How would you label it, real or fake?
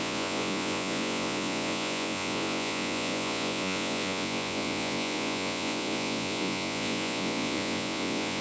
fake